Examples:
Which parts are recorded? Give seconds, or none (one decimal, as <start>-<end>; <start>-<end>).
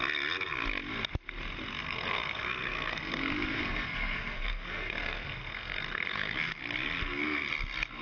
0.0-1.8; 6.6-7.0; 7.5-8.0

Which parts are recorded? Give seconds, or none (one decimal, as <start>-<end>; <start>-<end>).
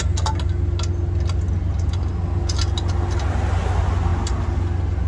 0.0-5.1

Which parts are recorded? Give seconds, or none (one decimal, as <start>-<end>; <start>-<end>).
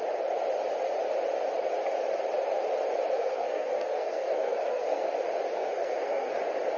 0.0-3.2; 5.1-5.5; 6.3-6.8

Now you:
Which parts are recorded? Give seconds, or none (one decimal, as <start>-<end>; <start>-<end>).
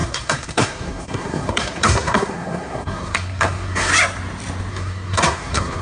3.9-4.7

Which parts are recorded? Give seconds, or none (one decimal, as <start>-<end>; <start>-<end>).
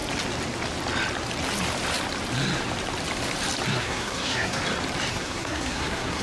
0.0-3.7; 4.6-5.1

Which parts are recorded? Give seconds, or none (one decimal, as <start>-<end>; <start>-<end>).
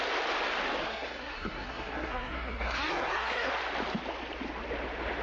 0.0-0.8; 3.5-5.2